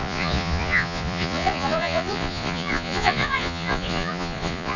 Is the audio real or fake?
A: fake